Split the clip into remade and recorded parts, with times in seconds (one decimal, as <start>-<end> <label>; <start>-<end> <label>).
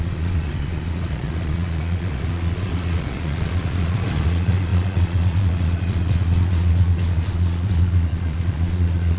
0.0-9.2 remade